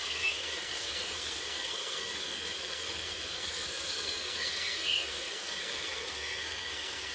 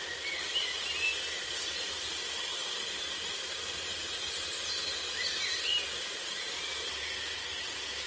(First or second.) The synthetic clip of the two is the first